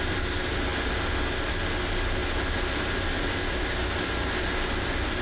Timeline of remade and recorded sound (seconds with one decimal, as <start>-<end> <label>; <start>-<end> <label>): 0.0-5.2 recorded